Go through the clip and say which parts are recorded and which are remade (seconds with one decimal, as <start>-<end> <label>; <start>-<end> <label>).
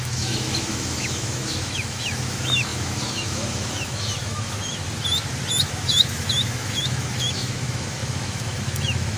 0.0-4.8 remade; 4.8-5.5 recorded; 5.5-9.2 remade